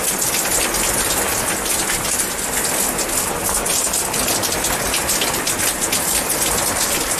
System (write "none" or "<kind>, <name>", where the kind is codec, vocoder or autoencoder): none